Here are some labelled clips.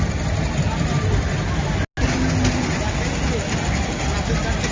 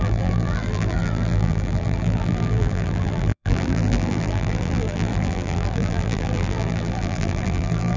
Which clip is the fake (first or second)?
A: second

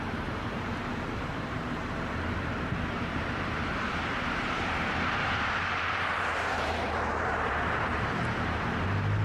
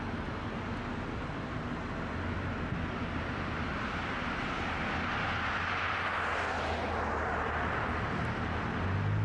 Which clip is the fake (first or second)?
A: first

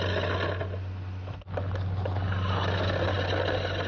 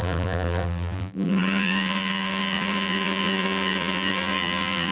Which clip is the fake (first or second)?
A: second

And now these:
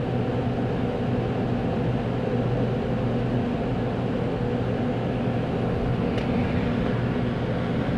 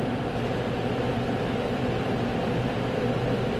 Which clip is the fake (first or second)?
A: second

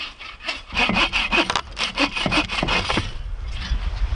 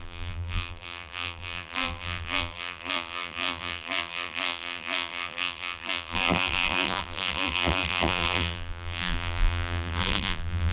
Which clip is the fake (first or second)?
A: second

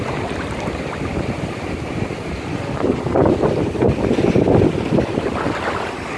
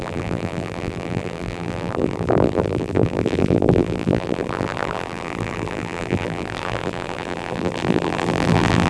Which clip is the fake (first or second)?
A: second